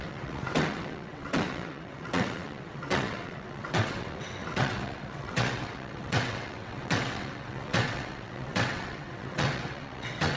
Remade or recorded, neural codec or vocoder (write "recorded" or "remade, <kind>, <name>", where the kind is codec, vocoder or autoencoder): remade, vocoder, WaveNeXt